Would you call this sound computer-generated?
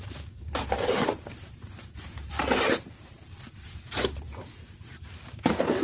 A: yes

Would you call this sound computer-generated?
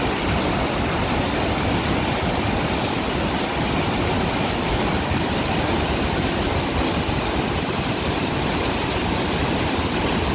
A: no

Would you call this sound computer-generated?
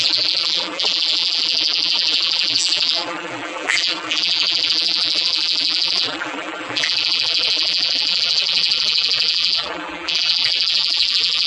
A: yes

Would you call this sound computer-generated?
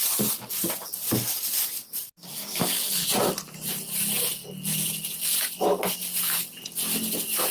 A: no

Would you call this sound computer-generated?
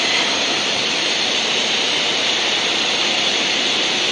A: yes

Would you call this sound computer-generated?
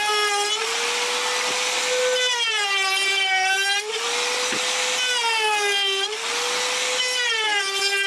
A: no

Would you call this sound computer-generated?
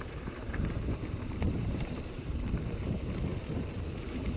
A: yes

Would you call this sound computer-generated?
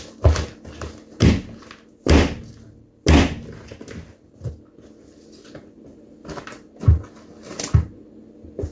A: no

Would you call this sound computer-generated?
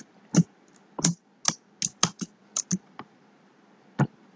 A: no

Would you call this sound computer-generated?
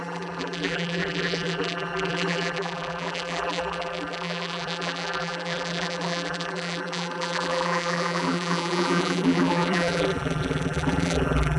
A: yes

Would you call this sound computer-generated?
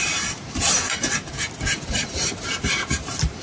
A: yes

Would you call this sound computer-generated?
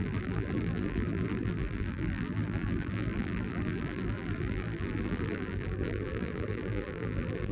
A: yes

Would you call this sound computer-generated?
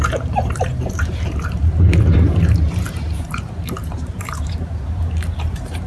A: yes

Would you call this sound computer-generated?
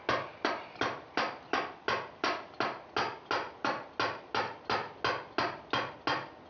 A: no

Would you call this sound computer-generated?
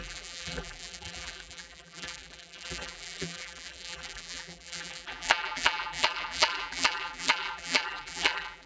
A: yes